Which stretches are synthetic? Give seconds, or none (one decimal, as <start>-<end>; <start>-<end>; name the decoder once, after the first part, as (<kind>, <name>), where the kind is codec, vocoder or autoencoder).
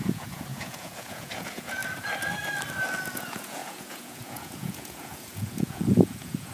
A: 0.0-1.8 (vocoder, Vocos); 3.1-6.5